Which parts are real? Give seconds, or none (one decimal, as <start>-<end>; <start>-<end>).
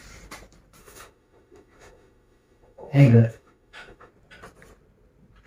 0.0-0.8; 4.1-5.5